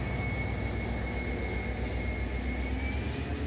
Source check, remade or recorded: recorded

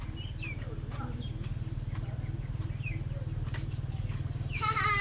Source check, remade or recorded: recorded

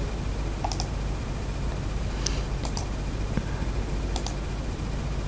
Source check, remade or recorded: recorded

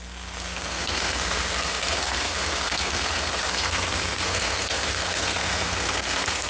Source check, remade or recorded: remade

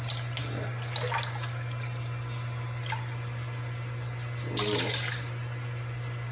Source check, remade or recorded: recorded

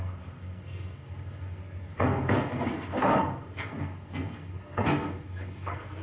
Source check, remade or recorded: remade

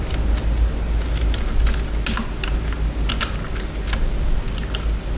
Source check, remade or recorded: recorded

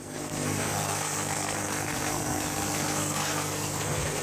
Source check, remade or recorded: remade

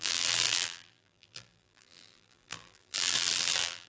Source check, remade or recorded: remade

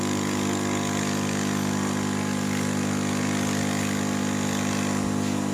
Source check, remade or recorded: recorded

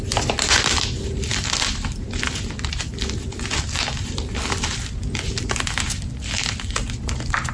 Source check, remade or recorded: recorded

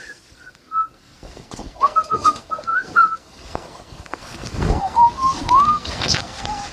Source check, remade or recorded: remade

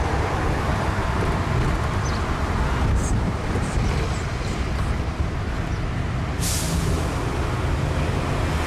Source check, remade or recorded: recorded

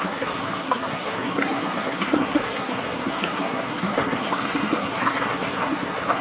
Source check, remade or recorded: remade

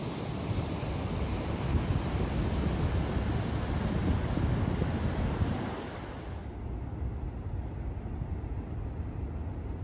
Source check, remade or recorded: recorded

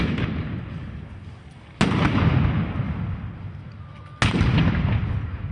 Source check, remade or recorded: recorded